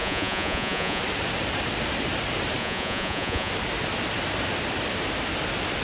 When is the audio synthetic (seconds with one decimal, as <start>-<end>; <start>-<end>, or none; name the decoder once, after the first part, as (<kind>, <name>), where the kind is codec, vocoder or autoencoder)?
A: 0.0-1.0 (vocoder, Vocos); 2.6-3.5